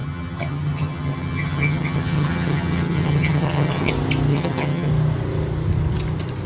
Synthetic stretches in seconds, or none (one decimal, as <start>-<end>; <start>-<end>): 0.0-3.9; 4.3-4.9